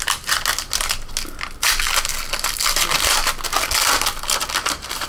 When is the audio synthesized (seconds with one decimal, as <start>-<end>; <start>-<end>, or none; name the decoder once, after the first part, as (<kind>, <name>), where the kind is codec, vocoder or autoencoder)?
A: none